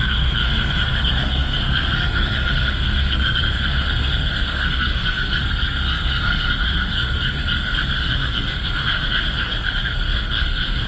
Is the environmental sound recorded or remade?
remade